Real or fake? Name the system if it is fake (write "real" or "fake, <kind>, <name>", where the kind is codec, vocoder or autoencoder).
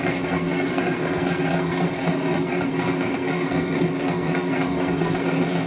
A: fake, codec, SNAC